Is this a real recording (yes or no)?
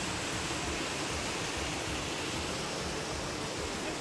yes